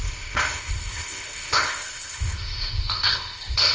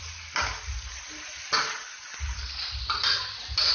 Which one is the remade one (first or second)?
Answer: first